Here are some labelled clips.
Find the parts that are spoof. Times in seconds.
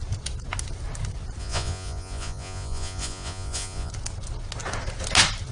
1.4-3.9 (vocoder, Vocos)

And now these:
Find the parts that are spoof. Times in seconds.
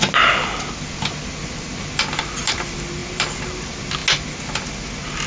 none